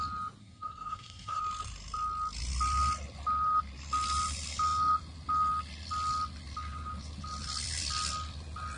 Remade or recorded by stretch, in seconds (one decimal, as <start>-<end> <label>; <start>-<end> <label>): 0.0-0.4 recorded; 0.4-1.4 remade; 1.4-8.8 recorded